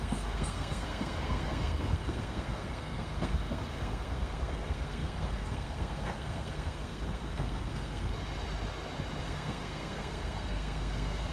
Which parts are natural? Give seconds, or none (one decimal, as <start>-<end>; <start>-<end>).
8.1-9.2